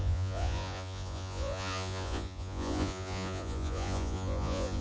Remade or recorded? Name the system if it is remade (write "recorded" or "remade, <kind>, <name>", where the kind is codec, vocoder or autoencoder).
remade, vocoder, Vocos